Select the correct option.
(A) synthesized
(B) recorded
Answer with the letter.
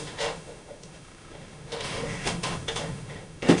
A